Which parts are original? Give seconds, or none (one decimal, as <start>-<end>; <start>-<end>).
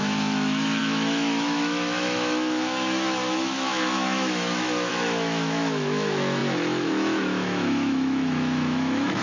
none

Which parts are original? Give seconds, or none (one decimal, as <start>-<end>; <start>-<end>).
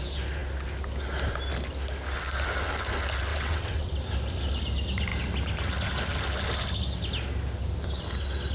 0.0-3.3; 3.9-8.5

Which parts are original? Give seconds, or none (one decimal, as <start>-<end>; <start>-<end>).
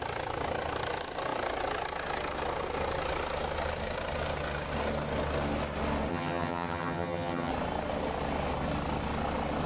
0.0-6.1; 7.5-9.7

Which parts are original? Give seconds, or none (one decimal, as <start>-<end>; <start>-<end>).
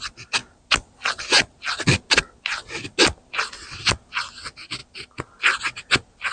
0.0-6.3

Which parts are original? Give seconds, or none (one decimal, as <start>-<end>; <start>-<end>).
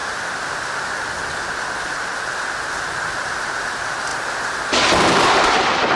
0.8-4.1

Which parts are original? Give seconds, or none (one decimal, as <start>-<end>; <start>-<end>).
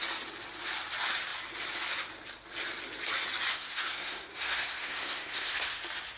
0.0-3.5; 5.8-6.2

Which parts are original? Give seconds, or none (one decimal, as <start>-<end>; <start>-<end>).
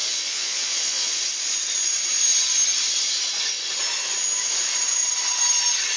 1.2-6.0